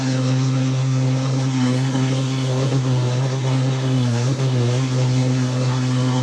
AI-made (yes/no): yes